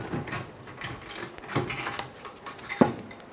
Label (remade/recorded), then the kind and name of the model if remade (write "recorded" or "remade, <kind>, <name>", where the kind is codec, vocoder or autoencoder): recorded